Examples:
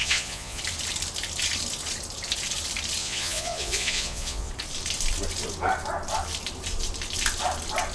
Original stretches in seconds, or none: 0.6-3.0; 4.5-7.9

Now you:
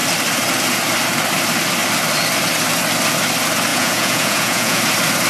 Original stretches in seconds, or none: 0.0-3.7; 4.8-5.3